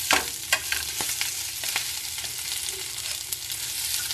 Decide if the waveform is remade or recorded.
recorded